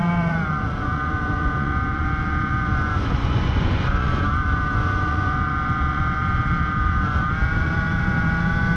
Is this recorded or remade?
remade